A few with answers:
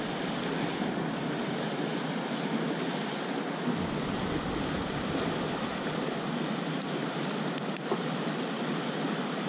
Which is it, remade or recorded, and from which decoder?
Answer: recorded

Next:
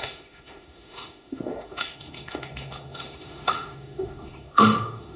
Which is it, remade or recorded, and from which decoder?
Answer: remade, autoencoder, DAC-VAE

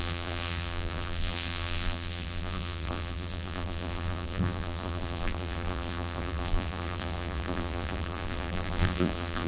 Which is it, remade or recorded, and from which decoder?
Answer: remade, vocoder, BigVGAN v2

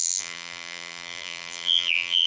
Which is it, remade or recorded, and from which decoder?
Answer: remade, vocoder, BigVGAN v2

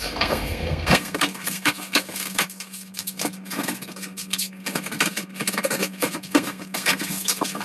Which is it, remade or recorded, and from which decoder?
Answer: remade, codec, SNAC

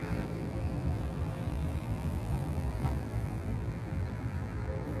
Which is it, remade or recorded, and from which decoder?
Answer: remade, vocoder, BigVGAN v2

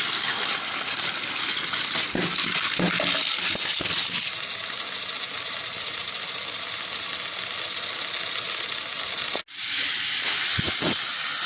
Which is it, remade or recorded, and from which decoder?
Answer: recorded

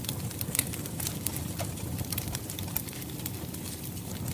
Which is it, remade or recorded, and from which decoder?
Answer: remade, vocoder, BigVGAN v2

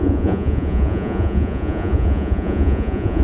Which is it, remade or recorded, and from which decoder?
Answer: remade, vocoder, Vocos